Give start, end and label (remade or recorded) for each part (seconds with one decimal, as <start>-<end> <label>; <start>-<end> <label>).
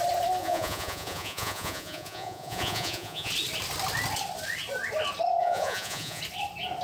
0.0-0.4 recorded; 0.4-3.3 remade; 3.3-5.4 recorded; 5.4-6.2 remade; 6.2-6.8 recorded